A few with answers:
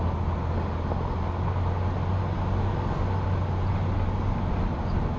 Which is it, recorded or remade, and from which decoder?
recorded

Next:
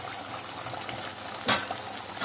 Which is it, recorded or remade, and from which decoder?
remade, vocoder, BigVGAN v2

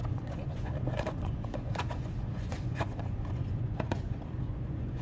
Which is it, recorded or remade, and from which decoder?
remade, vocoder, Vocos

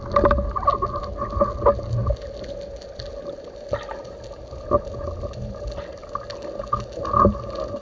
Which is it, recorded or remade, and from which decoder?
recorded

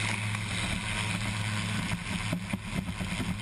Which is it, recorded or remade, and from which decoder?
recorded